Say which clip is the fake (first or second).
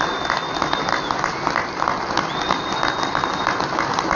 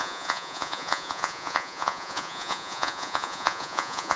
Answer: second